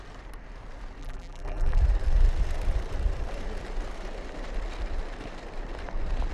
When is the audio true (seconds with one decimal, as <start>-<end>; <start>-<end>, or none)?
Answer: 0.0-1.0; 1.8-6.3